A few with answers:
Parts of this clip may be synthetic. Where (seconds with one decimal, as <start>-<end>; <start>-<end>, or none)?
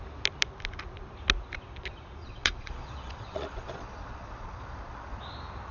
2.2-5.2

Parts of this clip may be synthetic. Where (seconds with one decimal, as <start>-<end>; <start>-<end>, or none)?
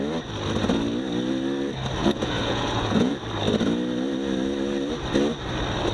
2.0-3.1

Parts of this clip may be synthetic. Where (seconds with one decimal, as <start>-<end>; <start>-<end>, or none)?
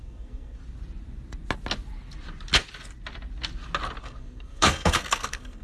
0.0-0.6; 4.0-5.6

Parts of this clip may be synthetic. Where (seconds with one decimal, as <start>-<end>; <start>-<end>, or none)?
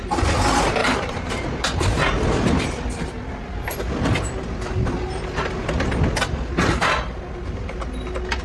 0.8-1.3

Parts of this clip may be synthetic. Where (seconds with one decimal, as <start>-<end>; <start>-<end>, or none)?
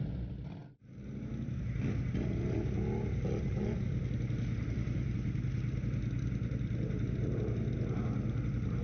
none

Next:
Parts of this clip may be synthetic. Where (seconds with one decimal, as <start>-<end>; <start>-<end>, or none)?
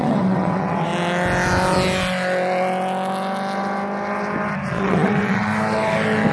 0.0-0.9; 4.7-5.5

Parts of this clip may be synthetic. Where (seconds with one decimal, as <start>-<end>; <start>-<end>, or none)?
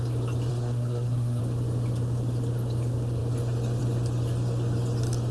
0.5-1.4